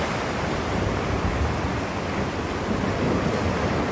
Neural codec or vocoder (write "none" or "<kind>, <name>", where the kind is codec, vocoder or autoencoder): none